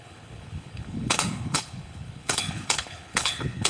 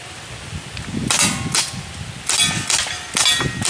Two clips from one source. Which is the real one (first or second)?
second